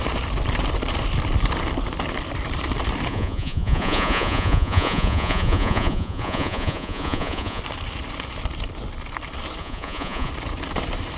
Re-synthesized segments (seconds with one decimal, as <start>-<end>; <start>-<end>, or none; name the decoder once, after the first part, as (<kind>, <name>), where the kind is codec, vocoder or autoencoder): 3.1-7.6 (vocoder, Vocos); 9.6-10.3